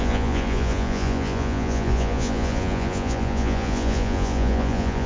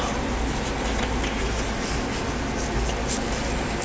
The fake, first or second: first